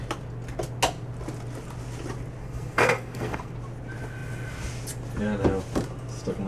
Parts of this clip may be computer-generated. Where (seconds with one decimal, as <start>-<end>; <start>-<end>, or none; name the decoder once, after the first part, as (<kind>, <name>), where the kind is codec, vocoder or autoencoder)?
2.4-3.5 (codec, SNAC)